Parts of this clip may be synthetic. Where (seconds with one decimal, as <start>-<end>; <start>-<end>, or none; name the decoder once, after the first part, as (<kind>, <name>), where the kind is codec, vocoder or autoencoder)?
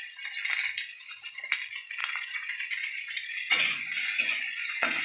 0.9-1.5 (vocoder, Vocos); 2.0-5.0